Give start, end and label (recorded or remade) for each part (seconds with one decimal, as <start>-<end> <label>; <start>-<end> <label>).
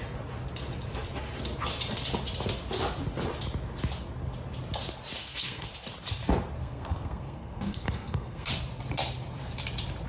0.0-5.2 recorded; 5.2-5.7 remade; 5.7-6.6 recorded; 6.6-8.5 remade; 8.5-10.1 recorded